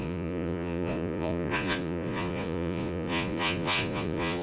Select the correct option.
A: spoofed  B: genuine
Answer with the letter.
A